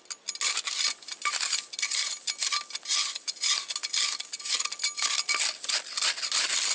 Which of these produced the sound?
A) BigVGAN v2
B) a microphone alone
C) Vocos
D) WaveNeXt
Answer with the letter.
B